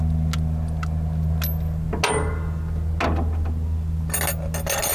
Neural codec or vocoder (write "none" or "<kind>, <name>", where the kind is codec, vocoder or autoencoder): none